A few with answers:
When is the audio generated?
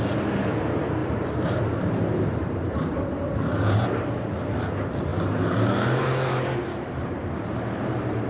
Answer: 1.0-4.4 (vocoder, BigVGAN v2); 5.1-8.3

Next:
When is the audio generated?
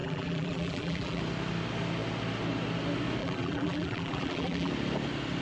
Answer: 0.0-1.2 (vocoder, BigVGAN v2); 3.2-4.7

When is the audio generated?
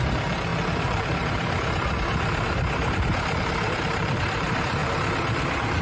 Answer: 0.0-4.8 (vocoder, BigVGAN v2)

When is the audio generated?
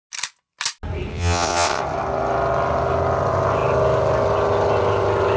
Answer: 1.1-1.8 (vocoder, WaveNeXt)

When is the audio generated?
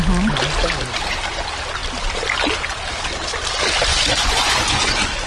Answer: 3.9-5.3 (vocoder, Vocos)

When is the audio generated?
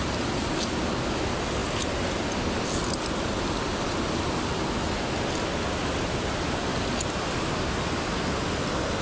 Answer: none